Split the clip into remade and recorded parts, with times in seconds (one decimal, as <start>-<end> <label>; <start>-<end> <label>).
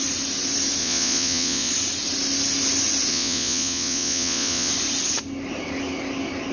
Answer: 0.0-0.8 recorded; 0.8-1.7 remade; 1.7-3.1 recorded; 3.1-4.7 remade; 4.7-6.5 recorded